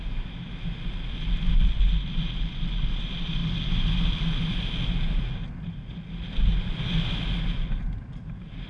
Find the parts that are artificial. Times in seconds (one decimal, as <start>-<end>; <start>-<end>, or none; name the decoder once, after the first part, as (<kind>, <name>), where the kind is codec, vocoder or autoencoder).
none